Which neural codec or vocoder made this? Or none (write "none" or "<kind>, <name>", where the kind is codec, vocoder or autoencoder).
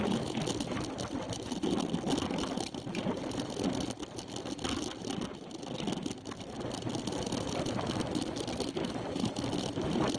none